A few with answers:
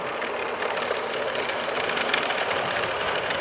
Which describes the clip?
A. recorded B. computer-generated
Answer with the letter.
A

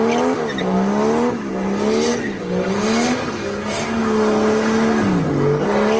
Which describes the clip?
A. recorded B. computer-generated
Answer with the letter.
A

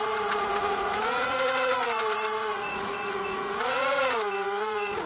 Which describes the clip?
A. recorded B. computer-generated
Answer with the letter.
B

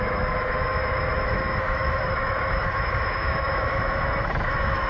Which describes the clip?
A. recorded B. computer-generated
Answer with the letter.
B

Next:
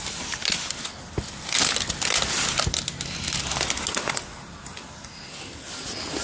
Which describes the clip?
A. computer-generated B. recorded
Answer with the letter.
B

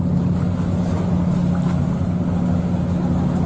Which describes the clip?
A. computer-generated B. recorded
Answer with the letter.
B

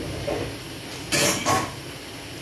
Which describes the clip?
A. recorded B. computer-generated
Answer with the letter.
A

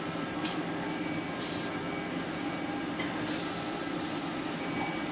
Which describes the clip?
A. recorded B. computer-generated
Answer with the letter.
A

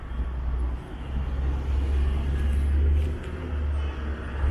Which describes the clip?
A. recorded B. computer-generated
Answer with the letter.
A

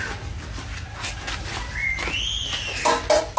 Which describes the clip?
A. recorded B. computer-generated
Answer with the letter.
A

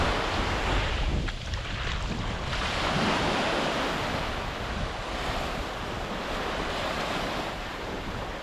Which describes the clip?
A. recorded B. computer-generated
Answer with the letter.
A